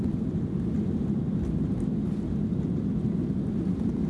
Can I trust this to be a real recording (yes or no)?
yes